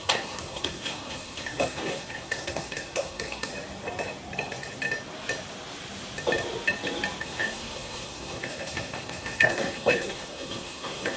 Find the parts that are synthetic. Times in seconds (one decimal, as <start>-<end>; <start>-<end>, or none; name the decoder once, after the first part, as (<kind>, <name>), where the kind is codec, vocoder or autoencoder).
0.0-3.5 (codec, SNAC); 7.2-11.2